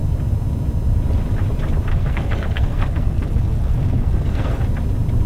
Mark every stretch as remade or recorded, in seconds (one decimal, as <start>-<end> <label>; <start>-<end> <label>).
0.0-1.9 recorded; 1.9-4.6 remade; 4.6-5.3 recorded